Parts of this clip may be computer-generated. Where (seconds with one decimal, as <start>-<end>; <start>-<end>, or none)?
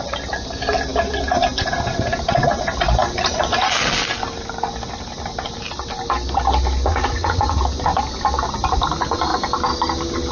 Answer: 6.9-7.6